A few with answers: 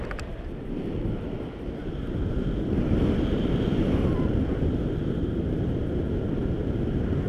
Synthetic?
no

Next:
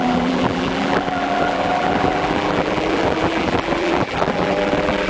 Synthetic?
yes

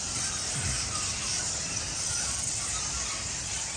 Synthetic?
no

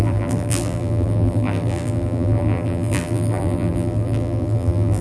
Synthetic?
yes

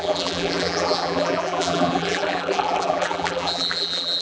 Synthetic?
yes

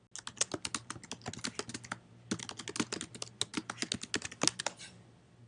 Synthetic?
no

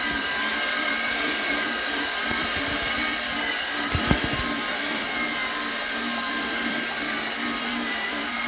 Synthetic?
yes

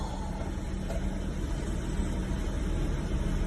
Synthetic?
no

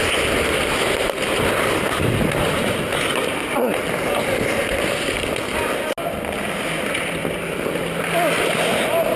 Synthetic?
no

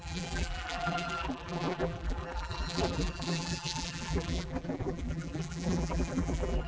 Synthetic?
yes